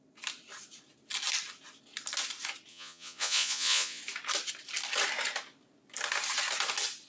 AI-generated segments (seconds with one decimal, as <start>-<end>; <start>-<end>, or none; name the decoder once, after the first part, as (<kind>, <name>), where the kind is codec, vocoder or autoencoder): 2.7-4.0 (vocoder, Vocos)